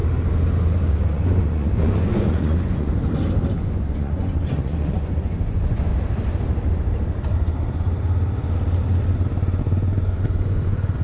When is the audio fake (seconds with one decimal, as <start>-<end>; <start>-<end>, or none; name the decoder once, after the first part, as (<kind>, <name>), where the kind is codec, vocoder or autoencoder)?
0.9-2.9 (vocoder, Vocos); 3.6-5.9; 9.6-11.0